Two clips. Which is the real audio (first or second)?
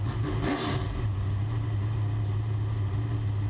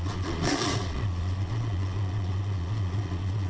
first